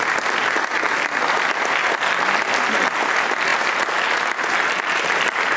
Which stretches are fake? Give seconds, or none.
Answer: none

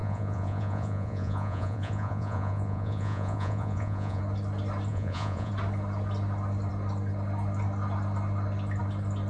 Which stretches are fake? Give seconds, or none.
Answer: 0.0-4.2 (vocoder, Vocos); 4.9-5.5

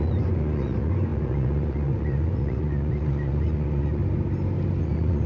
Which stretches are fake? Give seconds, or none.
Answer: 0.0-4.0 (vocoder, Vocos); 4.8-5.3

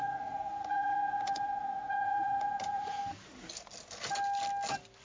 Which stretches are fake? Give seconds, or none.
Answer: 0.0-3.0 (vocoder, Vocos)

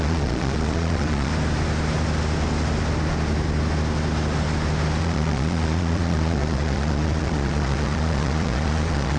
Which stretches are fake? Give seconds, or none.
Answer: 0.0-1.3 (vocoder, Vocos); 5.0-9.2

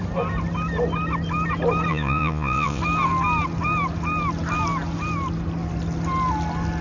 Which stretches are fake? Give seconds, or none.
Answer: 1.9-2.8 (vocoder, Vocos)

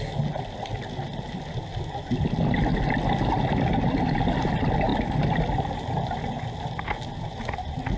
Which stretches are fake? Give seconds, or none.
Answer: none